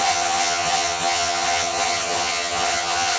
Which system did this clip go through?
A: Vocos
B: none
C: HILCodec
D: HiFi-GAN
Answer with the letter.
D